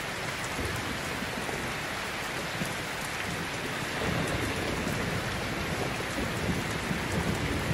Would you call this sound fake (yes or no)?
no